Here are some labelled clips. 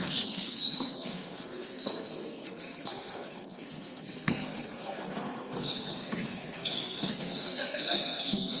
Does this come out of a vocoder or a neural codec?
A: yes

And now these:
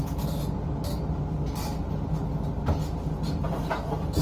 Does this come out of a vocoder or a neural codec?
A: no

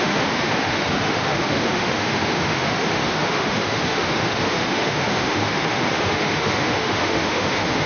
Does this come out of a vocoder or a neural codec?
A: yes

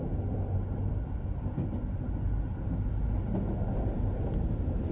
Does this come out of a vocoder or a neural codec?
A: no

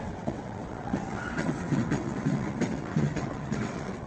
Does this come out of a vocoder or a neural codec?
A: yes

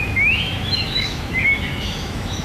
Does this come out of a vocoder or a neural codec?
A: yes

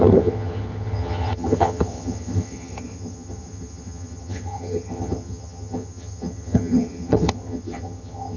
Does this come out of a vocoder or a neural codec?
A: yes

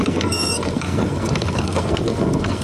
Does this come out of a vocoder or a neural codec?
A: yes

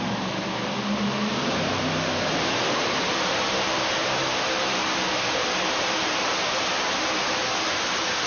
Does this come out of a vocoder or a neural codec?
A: yes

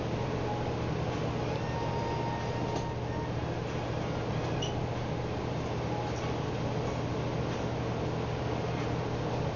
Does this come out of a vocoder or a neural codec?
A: no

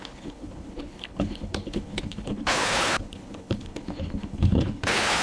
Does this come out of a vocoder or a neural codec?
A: yes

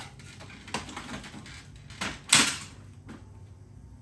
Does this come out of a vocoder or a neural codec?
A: no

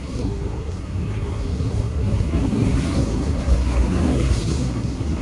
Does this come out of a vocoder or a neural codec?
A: yes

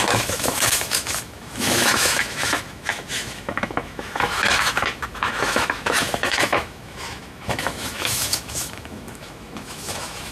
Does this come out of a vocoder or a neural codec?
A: yes